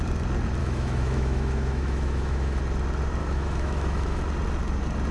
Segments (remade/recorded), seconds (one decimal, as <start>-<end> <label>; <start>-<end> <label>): 0.0-0.6 recorded; 0.6-2.6 remade; 2.6-3.2 recorded; 3.2-4.2 remade; 4.2-5.1 recorded